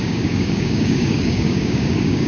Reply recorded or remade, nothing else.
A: remade